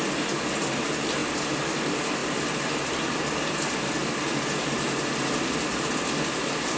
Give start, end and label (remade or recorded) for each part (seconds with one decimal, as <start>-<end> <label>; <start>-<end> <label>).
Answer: 0.0-6.8 recorded